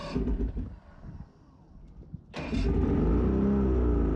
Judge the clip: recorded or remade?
recorded